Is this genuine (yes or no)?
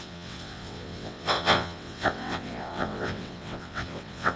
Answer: no